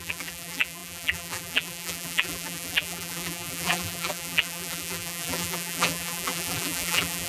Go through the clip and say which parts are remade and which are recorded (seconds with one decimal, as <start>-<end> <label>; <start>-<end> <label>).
0.0-7.3 remade